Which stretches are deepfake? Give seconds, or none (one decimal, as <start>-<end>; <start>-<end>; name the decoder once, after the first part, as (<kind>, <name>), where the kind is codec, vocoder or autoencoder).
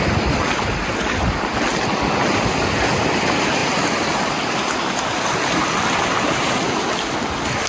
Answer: none